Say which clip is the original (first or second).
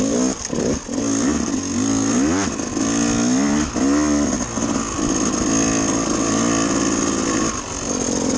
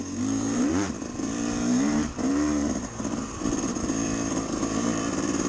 first